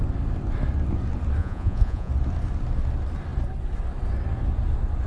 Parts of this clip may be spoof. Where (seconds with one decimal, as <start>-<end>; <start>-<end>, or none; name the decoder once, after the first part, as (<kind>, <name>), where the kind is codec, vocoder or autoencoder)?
1.4-2.1 (vocoder, Vocos)